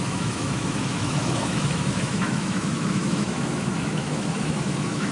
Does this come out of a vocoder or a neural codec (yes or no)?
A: yes